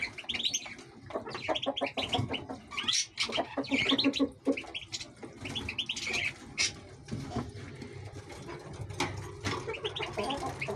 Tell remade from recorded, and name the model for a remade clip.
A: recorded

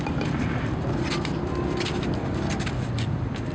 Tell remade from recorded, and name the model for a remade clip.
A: recorded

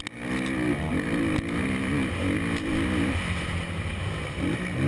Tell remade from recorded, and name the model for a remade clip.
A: recorded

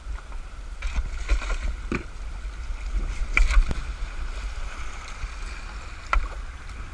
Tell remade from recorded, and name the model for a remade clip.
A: recorded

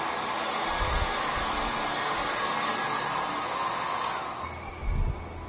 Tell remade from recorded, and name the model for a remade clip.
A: recorded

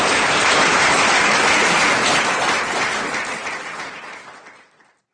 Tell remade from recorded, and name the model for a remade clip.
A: remade, vocoder, BigVGAN v2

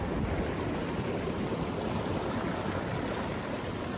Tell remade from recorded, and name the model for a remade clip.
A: recorded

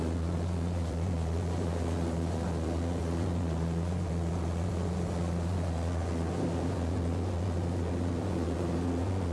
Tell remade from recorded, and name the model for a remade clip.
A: remade, vocoder, Vocos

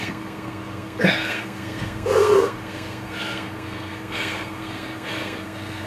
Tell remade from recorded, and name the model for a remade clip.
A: remade, codec, SNAC